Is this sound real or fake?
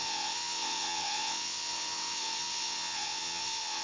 fake